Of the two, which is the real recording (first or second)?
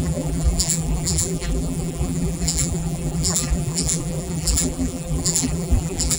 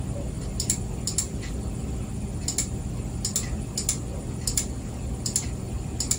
second